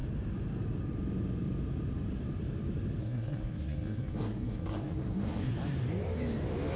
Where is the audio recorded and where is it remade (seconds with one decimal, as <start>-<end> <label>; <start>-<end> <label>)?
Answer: 0.0-3.0 recorded; 3.0-5.5 remade; 5.5-6.8 recorded